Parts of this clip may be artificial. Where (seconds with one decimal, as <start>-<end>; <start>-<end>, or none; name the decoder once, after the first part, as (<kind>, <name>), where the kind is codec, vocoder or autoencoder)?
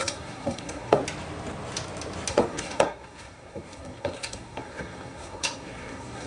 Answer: 0.0-1.0 (codec, SNAC); 2.3-6.3